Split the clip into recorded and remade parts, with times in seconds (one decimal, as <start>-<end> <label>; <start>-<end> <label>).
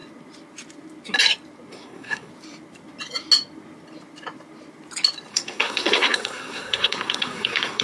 0.0-1.7 recorded; 1.7-2.3 remade; 2.3-5.3 recorded; 5.3-7.8 remade